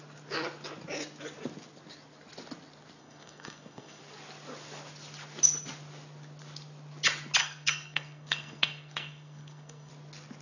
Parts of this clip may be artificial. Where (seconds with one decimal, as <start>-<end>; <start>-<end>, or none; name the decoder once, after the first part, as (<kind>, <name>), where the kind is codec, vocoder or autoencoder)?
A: 3.0-4.0 (codec, SNAC); 7.4-9.9